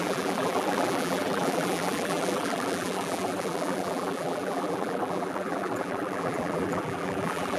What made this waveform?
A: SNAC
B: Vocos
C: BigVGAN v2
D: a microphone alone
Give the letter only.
C